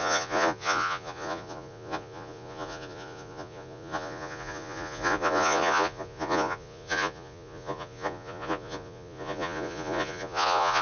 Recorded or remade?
remade